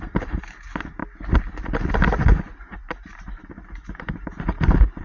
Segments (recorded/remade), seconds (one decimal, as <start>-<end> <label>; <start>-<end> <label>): 0.0-1.0 remade; 1.0-4.0 recorded; 4.0-5.0 remade